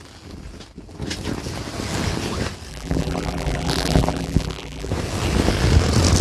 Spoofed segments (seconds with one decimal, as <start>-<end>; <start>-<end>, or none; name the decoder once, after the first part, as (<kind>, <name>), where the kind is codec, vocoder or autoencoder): 2.7-4.9 (vocoder, BigVGAN v2)